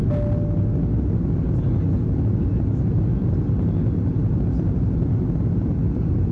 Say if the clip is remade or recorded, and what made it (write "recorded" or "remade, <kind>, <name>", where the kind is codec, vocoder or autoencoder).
recorded